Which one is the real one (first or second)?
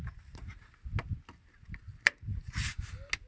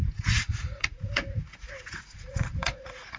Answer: first